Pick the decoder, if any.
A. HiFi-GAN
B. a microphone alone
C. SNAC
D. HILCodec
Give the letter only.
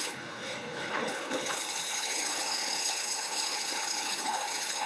D